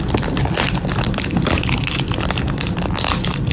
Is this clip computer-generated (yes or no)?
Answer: no